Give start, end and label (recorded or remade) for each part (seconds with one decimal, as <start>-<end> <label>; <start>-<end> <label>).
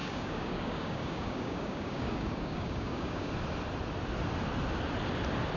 0.0-3.3 remade; 3.3-5.6 recorded